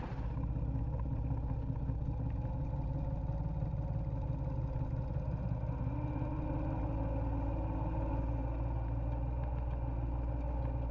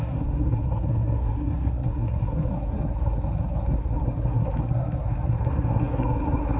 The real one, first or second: first